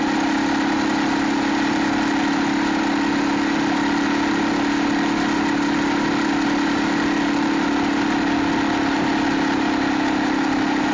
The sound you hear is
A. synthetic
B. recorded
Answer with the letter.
B